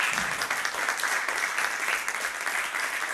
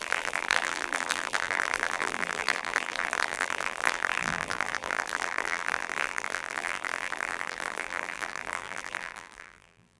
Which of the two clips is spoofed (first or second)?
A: second